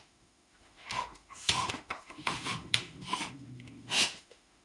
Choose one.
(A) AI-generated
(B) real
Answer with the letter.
A